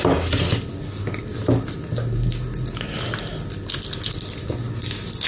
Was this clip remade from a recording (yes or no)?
no